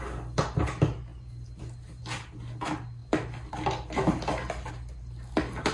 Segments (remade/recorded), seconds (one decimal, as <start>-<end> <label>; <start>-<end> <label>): 0.0-5.7 recorded